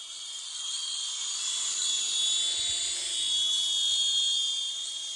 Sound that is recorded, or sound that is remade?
recorded